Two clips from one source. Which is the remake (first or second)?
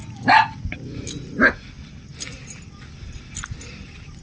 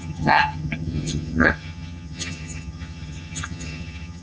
second